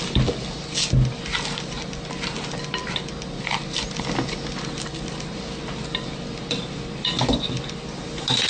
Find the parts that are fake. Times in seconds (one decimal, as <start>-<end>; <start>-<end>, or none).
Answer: none